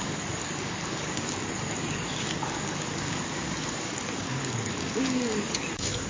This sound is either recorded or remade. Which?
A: remade